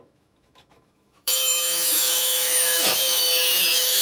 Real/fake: fake